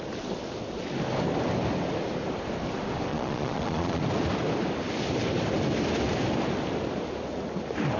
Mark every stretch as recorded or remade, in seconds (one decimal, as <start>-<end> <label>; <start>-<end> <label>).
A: 0.0-3.1 recorded; 3.1-4.0 remade; 4.0-8.0 recorded